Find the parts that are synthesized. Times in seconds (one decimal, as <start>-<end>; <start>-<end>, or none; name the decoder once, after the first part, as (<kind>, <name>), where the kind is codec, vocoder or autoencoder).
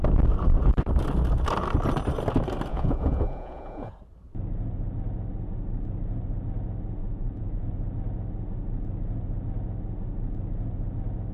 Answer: 2.7-3.9 (vocoder, Vocos); 7.0-7.7